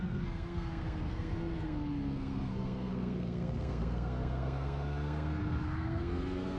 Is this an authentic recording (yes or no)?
no